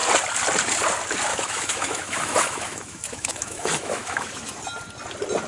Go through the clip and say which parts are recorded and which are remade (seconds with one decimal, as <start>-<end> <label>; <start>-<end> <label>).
0.0-1.3 recorded; 1.3-4.6 remade; 4.6-5.5 recorded